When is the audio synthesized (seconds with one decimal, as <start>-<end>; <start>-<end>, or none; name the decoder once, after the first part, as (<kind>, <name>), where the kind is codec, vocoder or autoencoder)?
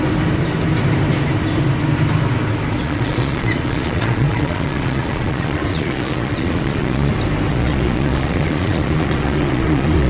2.8-7.1 (vocoder, Vocos); 7.5-10.1